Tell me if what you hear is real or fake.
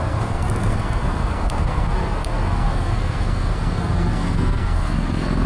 fake